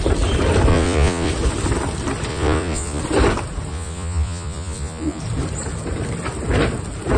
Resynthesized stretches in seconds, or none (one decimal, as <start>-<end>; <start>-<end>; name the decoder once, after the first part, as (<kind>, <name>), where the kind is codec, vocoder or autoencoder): 0.7-1.3 (vocoder, Vocos); 2.3-3.0; 3.7-5.2